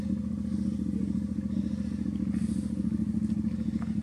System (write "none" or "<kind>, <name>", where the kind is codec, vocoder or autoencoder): none